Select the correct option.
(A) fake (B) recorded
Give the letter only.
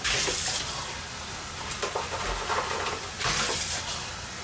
B